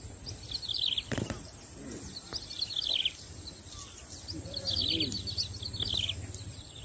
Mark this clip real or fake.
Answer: real